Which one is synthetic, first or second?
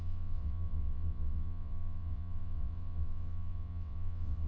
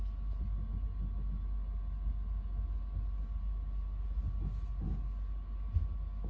first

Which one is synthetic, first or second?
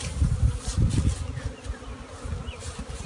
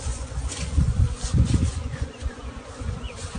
second